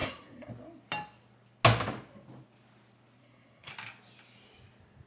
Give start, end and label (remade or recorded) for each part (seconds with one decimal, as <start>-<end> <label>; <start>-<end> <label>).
0.0-0.5 remade; 0.5-3.2 recorded; 3.2-3.7 remade; 3.7-5.1 recorded